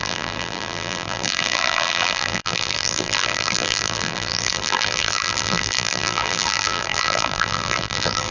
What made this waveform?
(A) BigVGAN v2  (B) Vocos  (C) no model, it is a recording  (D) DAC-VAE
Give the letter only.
A